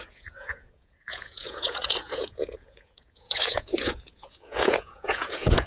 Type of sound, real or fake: fake